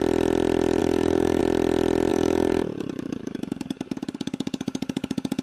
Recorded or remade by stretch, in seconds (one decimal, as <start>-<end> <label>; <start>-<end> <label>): 0.0-0.8 recorded; 0.8-1.4 remade; 1.4-2.1 recorded; 2.1-5.4 remade